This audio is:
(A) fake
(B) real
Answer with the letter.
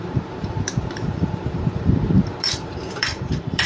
A